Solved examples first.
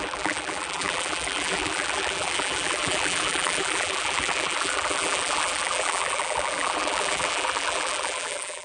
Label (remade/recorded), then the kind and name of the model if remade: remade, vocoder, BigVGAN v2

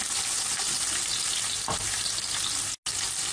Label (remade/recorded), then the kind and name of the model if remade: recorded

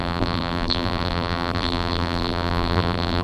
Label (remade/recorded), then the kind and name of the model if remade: remade, vocoder, BigVGAN v2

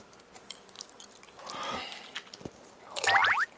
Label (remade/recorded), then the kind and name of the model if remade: recorded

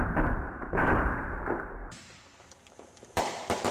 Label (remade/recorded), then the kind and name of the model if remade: remade, vocoder, BigVGAN v2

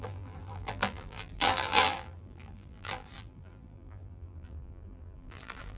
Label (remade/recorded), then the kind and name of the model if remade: remade, vocoder, BigVGAN v2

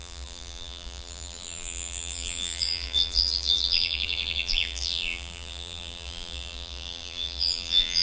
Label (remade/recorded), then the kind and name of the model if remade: remade, vocoder, BigVGAN v2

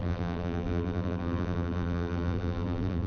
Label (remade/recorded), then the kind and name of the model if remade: remade, vocoder, BigVGAN v2